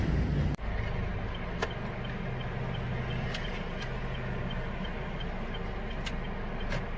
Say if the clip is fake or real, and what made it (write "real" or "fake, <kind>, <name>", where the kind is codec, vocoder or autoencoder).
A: real